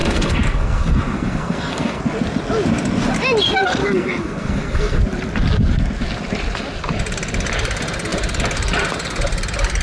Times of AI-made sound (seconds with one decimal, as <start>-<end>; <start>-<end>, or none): 0.0-2.0; 3.8-5.0